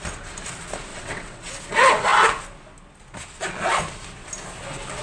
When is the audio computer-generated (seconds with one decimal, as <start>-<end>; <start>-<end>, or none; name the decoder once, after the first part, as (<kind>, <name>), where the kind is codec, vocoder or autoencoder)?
0.9-1.6 (vocoder, WaveNeXt)